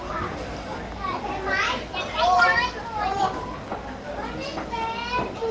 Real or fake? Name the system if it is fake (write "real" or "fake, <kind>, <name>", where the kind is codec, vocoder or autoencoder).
real